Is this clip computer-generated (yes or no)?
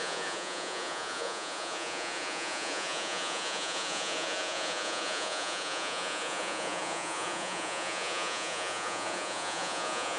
yes